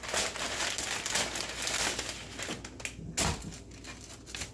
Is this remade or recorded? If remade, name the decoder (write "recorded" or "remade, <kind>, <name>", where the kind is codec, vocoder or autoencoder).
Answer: recorded